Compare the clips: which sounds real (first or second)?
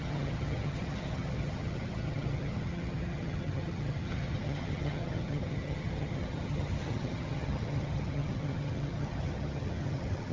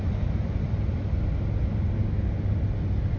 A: second